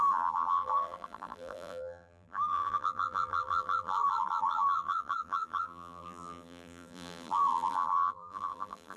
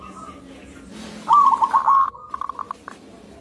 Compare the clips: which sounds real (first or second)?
second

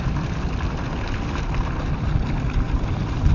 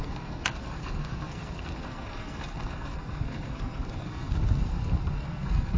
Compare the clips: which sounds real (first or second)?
first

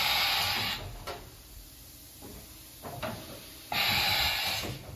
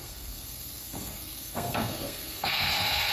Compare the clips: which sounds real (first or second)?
first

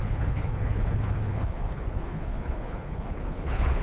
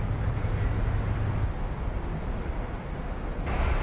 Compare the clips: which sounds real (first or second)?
second